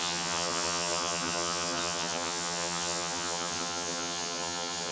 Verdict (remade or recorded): remade